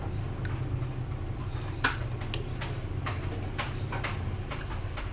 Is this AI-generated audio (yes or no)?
no